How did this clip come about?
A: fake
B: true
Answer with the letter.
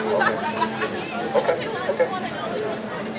B